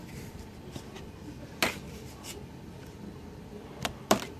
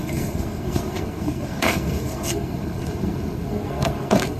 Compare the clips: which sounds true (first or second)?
first